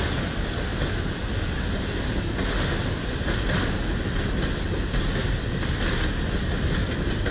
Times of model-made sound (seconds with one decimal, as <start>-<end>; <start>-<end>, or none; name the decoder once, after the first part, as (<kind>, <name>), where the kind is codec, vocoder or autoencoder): none